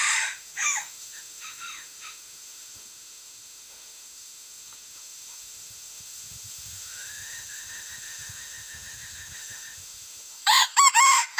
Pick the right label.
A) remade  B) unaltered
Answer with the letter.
A